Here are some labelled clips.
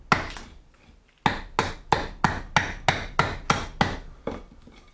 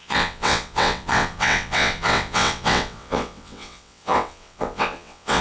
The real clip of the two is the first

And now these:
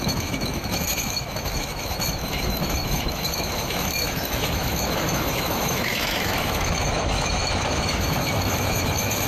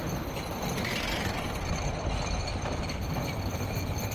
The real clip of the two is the second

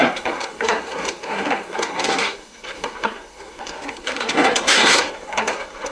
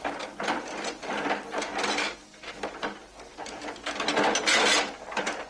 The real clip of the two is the second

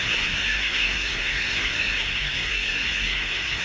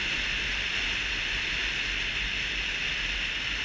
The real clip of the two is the second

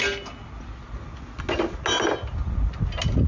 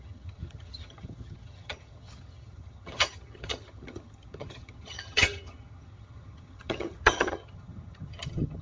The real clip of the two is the first